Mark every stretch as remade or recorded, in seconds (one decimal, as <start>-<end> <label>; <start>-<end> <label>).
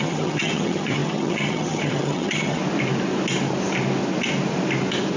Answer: 0.0-2.6 remade; 2.6-5.2 recorded